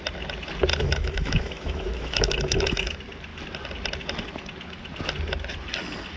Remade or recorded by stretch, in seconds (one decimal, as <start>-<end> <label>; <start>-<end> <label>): 0.0-0.7 recorded; 0.7-2.9 remade; 2.9-6.2 recorded